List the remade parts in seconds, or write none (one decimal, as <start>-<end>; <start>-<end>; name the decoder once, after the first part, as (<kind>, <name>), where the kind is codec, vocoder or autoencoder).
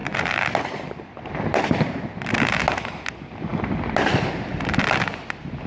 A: 0.0-2.3 (vocoder, BigVGAN v2); 3.5-5.0